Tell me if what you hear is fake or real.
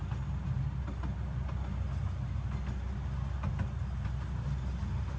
real